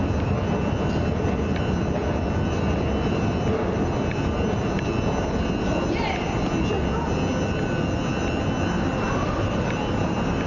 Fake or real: real